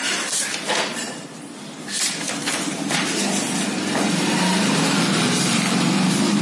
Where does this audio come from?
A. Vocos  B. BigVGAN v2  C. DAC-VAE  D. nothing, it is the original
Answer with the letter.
B